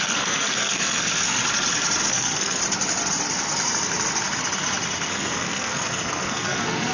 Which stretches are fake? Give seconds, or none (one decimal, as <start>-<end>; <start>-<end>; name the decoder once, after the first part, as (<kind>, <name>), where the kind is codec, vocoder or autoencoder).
0.0-1.4 (codec, SNAC); 2.1-2.6; 5.1-6.9